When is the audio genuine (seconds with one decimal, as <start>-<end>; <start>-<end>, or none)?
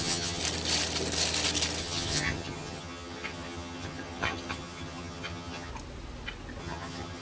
0.4-1.8; 5.7-6.6